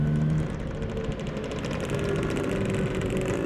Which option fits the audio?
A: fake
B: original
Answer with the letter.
B